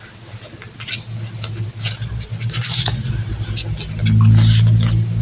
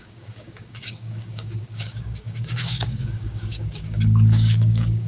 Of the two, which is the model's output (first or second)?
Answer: second